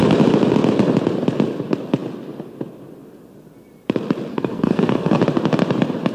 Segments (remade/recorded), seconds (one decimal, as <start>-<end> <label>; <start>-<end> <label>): 0.0-4.3 recorded; 4.3-5.2 remade; 5.2-6.1 recorded